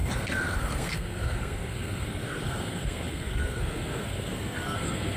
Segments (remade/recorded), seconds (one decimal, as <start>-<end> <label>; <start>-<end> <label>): 0.0-5.2 remade